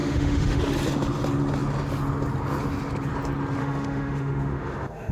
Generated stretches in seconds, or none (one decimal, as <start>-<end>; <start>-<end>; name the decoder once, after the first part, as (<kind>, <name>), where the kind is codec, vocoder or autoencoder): 0.0-0.6 (autoencoder, DAC-VAE); 3.6-5.1

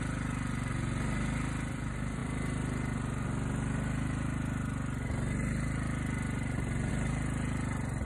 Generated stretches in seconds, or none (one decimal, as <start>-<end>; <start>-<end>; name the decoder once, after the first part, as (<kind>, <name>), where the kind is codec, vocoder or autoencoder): none

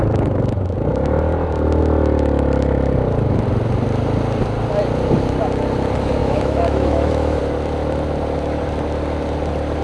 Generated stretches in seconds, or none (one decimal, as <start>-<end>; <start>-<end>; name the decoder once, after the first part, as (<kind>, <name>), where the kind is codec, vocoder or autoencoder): 6.2-7.4 (autoencoder, DAC-VAE)

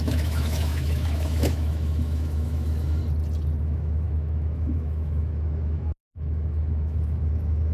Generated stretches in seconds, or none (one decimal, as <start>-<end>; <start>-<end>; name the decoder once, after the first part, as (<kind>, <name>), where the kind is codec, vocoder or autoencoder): 0.0-3.0 (autoencoder, DAC-VAE); 3.6-7.7

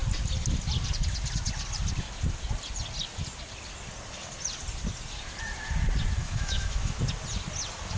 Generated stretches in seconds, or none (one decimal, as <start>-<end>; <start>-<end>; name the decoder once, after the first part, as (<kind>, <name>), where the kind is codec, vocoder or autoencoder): 6.2-7.0 (autoencoder, DAC-VAE)